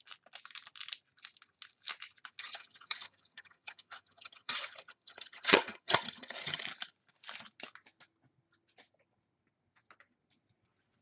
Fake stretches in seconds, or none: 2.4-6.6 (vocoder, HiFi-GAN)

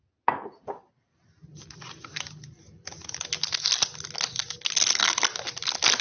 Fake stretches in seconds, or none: none

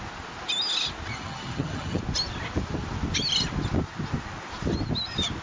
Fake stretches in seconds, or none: 1.1-2.0 (vocoder, HiFi-GAN)

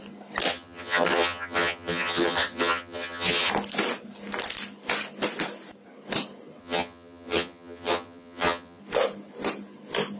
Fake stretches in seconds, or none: 0.5-3.5 (vocoder, HiFi-GAN); 6.6-8.8

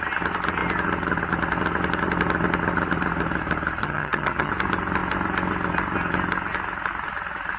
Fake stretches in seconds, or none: 3.8-4.5 (vocoder, HiFi-GAN)

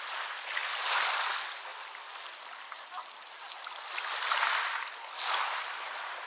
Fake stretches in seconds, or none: none

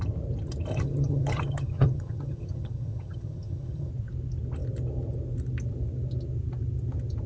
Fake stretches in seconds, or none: 0.7-3.9 (vocoder, HiFi-GAN)

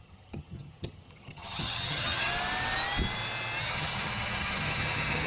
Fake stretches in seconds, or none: 0.0-2.3 (vocoder, HiFi-GAN); 3.6-5.3